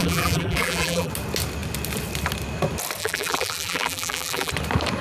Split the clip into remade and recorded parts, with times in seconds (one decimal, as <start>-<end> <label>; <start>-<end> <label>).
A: 0.0-1.1 remade; 1.1-3.0 recorded; 3.0-4.5 remade; 4.5-5.0 recorded

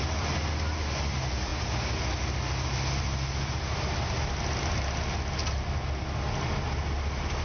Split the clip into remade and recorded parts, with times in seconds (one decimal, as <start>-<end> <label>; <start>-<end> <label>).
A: 0.0-7.4 recorded